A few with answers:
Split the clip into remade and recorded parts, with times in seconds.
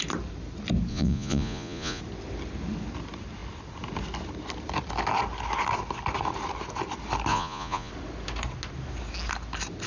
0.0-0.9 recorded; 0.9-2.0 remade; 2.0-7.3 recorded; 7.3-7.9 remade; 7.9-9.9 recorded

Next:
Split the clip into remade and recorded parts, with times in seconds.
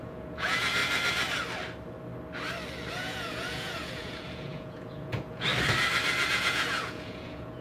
0.0-0.8 remade; 0.8-2.9 recorded; 2.9-5.5 remade; 5.5-6.3 recorded; 6.3-7.6 remade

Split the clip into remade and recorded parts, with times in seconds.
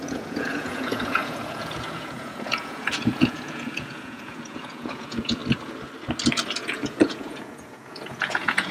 0.0-5.4 remade; 5.4-6.6 recorded; 6.6-8.7 remade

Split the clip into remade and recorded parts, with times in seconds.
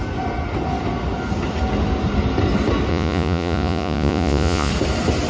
0.0-2.9 recorded; 2.9-4.7 remade; 4.7-5.3 recorded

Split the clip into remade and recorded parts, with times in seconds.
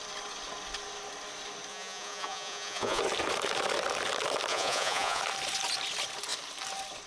0.0-1.7 recorded; 1.7-3.0 remade; 3.0-4.5 recorded; 4.5-5.2 remade; 5.2-7.1 recorded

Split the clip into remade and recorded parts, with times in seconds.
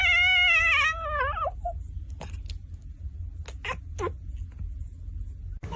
0.0-5.8 recorded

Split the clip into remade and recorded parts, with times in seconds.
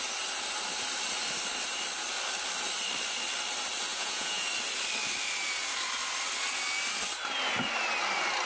0.0-3.9 recorded; 3.9-4.5 remade; 4.5-8.5 recorded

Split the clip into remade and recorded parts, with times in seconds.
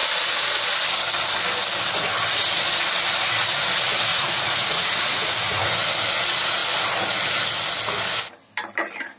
0.0-4.1 recorded; 4.1-5.7 remade; 5.7-9.2 recorded